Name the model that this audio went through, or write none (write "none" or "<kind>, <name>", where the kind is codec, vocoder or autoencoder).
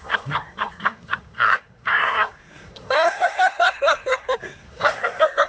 codec, SNAC